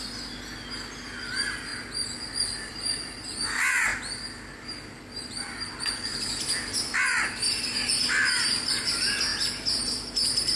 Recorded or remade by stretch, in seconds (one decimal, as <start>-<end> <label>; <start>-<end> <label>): 0.0-10.6 recorded